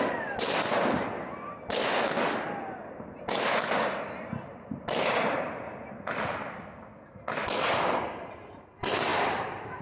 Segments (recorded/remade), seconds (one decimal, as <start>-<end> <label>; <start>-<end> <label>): 0.0-9.1 recorded; 9.1-9.8 remade